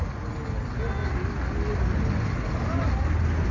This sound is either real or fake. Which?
real